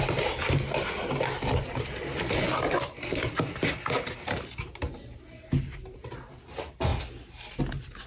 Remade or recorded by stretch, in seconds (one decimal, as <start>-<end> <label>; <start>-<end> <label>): 0.0-8.1 recorded